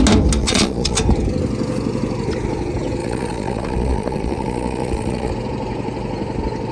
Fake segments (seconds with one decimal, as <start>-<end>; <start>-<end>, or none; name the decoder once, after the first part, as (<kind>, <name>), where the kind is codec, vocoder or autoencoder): 0.4-1.0 (vocoder, Vocos); 3.0-5.3